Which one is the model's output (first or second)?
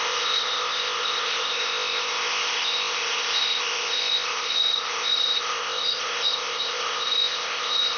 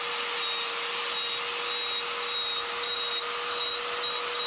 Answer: first